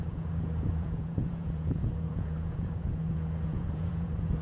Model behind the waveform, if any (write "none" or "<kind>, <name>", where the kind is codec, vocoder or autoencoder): vocoder, Vocos